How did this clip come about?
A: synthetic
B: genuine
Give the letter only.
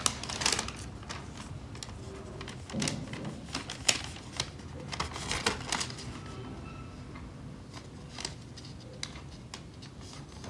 B